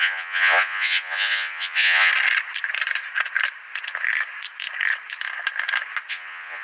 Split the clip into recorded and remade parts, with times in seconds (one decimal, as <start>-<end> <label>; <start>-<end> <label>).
0.0-2.1 remade; 2.1-6.1 recorded; 6.1-6.6 remade